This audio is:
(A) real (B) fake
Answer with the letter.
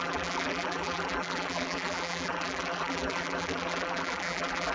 B